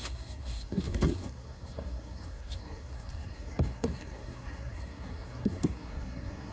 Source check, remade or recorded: remade